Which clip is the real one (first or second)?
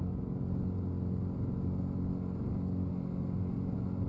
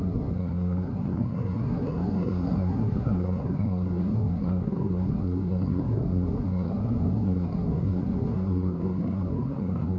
first